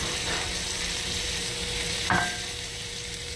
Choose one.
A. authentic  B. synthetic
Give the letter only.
B